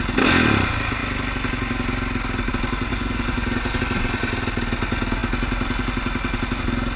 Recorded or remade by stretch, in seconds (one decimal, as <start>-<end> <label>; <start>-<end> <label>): 0.0-2.9 recorded; 2.9-3.8 remade; 3.8-7.0 recorded